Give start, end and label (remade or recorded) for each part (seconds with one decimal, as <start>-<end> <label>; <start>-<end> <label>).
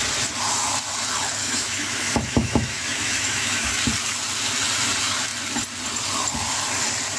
0.0-1.4 recorded; 1.4-3.8 remade; 3.8-7.2 recorded